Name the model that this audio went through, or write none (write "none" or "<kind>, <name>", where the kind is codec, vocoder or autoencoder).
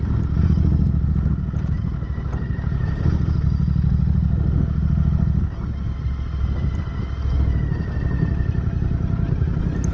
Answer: none